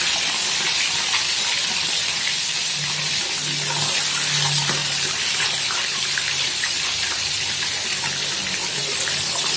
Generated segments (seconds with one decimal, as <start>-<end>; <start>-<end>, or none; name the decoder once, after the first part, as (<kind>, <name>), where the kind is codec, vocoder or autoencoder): 1.8-3.1 (vocoder, BigVGAN v2); 4.8-8.0